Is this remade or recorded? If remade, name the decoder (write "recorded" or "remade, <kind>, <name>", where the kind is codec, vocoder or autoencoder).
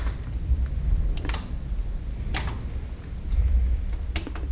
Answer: recorded